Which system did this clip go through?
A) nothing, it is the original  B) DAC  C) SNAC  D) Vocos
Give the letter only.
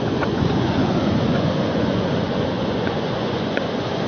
D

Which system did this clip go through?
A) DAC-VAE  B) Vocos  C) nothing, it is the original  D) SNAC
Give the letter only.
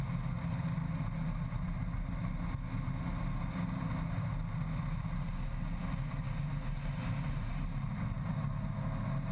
C